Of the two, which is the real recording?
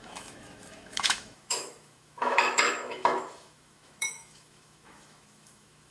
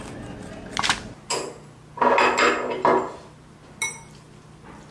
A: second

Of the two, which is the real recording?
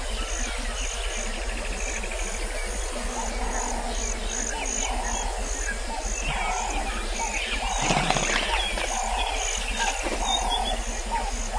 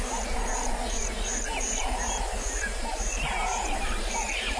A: first